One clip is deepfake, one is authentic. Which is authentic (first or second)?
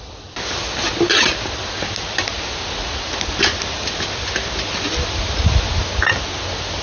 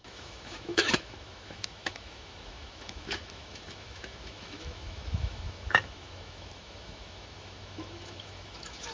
first